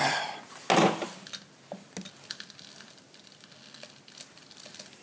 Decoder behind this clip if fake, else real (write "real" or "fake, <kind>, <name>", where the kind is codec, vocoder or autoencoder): real